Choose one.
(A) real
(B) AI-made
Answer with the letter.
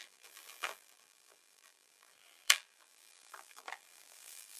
B